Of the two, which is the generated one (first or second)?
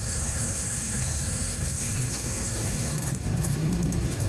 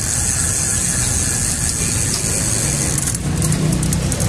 first